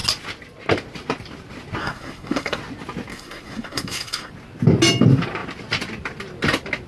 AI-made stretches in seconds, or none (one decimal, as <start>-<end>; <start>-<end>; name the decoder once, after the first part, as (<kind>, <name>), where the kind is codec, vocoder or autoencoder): 1.8-2.6 (codec, SNAC); 3.1-4.3